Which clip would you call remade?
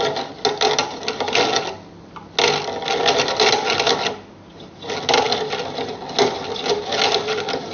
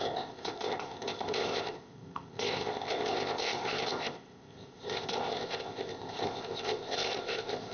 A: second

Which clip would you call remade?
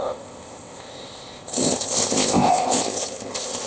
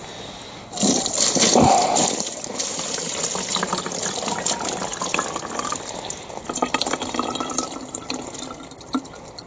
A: first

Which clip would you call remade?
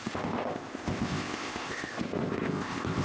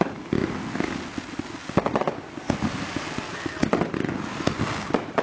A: first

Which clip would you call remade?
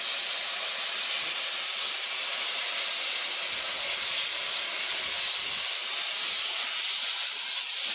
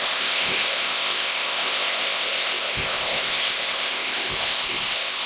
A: second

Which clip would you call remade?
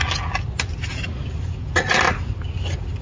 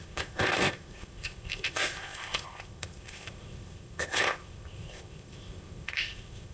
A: second